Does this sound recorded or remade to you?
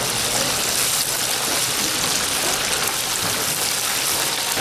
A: recorded